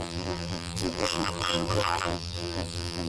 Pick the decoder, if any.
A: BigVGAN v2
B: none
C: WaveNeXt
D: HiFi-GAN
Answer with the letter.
A